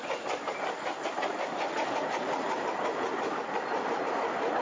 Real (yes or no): yes